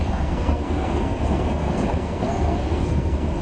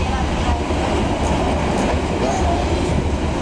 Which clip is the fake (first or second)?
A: first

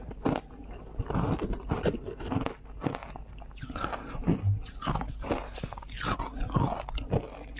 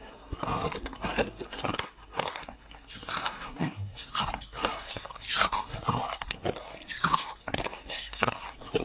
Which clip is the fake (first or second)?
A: second